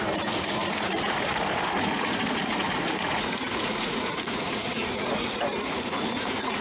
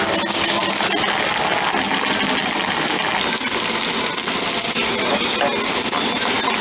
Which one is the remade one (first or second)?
first